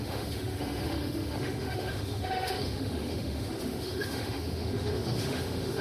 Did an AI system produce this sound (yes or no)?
yes